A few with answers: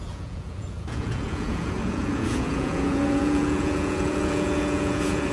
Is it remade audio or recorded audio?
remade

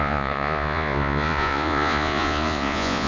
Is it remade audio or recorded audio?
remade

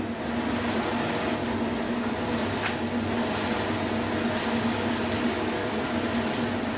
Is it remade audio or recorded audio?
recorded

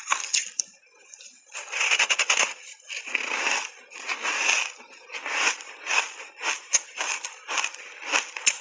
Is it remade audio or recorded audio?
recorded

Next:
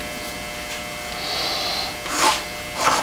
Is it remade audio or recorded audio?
recorded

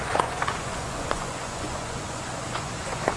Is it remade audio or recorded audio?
remade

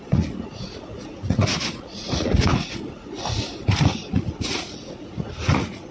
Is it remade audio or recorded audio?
remade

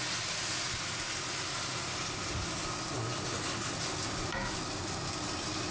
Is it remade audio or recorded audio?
recorded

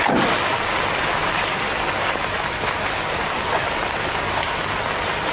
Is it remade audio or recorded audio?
recorded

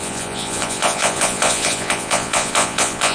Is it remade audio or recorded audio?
remade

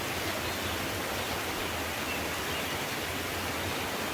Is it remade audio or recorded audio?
recorded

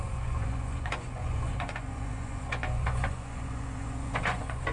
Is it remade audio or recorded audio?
remade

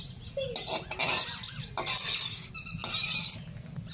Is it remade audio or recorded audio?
recorded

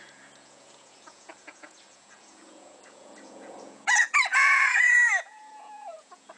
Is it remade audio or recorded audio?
remade